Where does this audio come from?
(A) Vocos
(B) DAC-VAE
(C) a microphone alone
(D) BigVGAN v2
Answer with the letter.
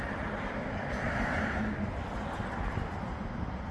C